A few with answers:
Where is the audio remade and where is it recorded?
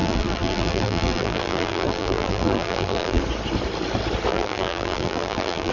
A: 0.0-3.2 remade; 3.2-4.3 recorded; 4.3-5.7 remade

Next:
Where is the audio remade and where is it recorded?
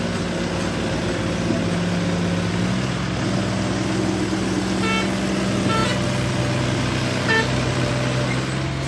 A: 0.0-8.9 recorded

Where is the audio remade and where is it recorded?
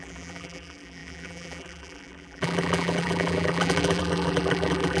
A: 0.0-5.0 remade